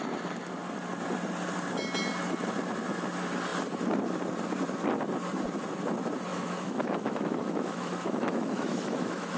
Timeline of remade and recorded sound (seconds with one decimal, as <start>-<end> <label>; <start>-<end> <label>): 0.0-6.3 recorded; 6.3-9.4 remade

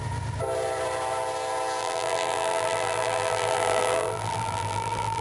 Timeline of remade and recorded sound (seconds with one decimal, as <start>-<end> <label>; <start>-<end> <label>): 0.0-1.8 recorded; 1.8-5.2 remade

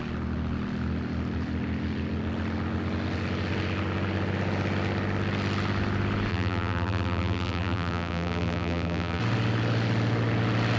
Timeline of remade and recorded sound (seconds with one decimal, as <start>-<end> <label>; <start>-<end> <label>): 0.0-6.3 recorded; 6.3-9.2 remade; 9.2-10.8 recorded

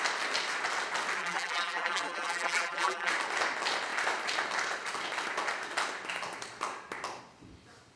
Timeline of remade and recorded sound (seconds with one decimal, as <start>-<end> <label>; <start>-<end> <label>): 0.0-1.2 recorded; 1.2-3.1 remade; 3.1-8.0 recorded

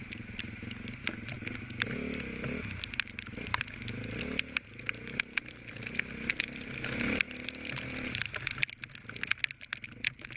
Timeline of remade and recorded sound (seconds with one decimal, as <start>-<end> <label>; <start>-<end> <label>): 0.0-10.4 recorded

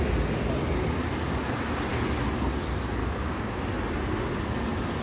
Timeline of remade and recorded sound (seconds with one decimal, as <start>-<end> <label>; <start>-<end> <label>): 0.0-3.0 recorded; 3.0-3.6 remade; 3.6-5.0 recorded